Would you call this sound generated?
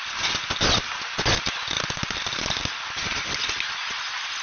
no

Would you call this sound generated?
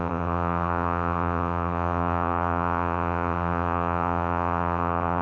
yes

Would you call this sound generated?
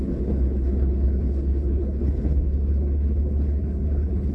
yes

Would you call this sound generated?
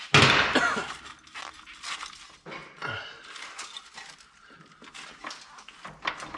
no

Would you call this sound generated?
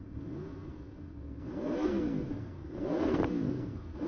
yes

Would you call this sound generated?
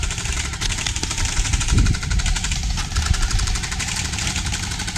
yes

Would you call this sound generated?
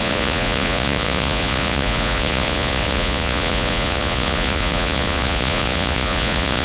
yes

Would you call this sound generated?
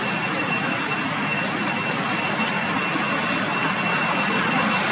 no